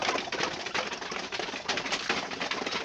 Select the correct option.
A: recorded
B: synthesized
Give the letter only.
A